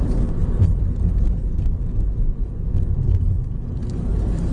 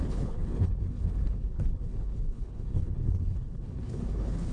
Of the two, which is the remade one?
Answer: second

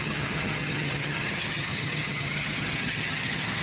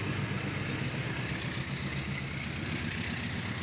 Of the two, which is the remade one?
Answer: first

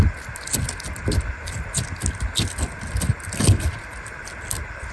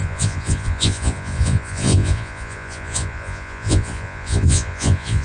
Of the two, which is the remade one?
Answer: second